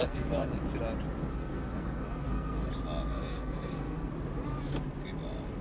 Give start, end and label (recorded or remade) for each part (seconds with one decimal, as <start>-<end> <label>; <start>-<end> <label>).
0.0-0.5 remade; 0.5-1.3 recorded; 1.3-2.7 remade; 2.7-3.1 recorded; 3.1-4.1 remade; 4.1-5.6 recorded